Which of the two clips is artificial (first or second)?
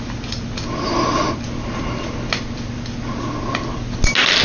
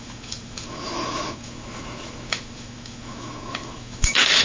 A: second